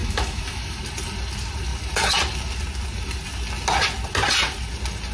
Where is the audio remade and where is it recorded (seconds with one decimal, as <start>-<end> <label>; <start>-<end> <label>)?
0.0-0.8 remade; 0.8-5.1 recorded